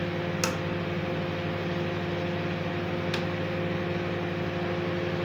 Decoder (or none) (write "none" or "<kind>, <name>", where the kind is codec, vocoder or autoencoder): none